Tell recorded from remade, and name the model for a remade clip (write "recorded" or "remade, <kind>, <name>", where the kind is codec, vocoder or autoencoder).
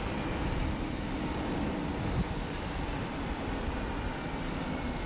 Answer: recorded